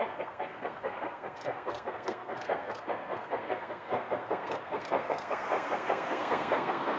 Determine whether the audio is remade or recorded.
remade